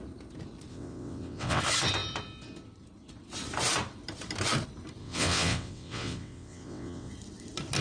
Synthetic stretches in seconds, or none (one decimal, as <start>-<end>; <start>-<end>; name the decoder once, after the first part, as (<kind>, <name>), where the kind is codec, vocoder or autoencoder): 0.7-1.6 (vocoder, WaveNeXt); 5.0-7.1

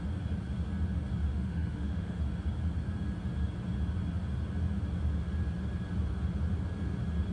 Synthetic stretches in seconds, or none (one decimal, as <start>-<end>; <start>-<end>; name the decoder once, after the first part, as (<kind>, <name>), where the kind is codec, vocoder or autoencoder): 1.3-2.2 (autoencoder, DAC-VAE)

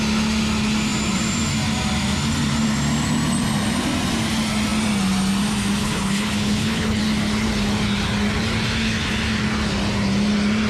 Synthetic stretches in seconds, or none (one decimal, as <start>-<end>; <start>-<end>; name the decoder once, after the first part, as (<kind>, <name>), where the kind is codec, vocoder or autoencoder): 5.8-7.0 (codec, HILCodec)

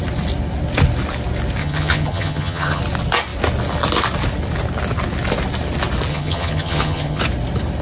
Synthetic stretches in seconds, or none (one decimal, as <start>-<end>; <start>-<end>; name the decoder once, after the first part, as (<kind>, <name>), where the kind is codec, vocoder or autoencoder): 1.6-2.8 (vocoder, HiFi-GAN); 6.1-7.2

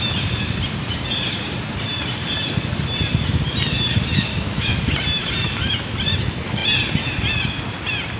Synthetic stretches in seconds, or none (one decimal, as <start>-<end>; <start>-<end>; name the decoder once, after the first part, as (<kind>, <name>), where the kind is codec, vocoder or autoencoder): 4.3-4.8 (autoencoder, DAC-VAE); 5.4-5.9

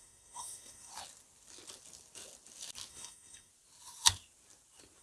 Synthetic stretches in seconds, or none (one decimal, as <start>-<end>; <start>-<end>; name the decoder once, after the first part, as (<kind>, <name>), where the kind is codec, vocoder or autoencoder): 0.0-0.9 (codec, SNAC); 2.9-3.5

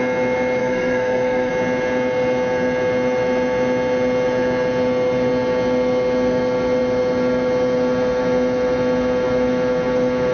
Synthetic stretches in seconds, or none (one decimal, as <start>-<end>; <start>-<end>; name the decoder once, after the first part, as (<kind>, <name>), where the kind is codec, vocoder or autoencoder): 0.6-1.5 (codec, SNAC)

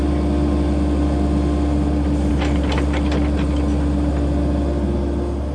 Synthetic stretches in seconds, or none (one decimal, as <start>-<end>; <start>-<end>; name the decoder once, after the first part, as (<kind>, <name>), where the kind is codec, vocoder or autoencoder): none